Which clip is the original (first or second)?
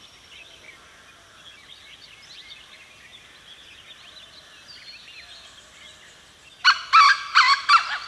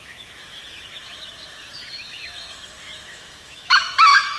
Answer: first